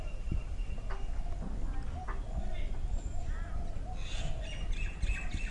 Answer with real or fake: real